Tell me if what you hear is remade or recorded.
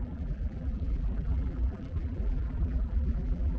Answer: remade